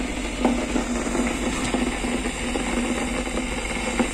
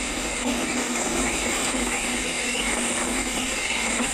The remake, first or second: second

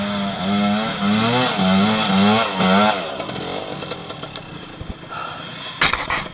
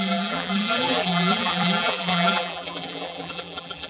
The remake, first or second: second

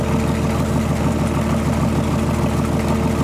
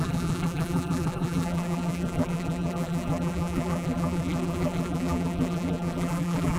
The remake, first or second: second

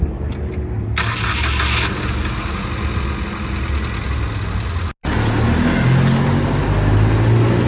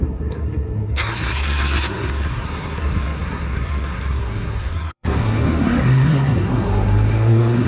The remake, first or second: second